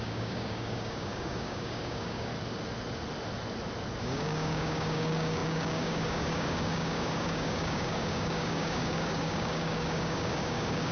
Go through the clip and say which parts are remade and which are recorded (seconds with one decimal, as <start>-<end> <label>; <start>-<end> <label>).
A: 0.0-2.3 remade; 2.3-4.0 recorded; 4.0-10.9 remade